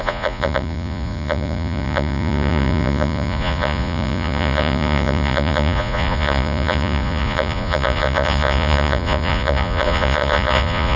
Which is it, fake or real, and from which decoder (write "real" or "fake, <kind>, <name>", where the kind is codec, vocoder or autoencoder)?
fake, vocoder, Vocos